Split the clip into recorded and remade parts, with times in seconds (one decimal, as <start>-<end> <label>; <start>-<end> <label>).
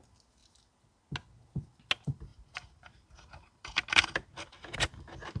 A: 0.0-5.4 recorded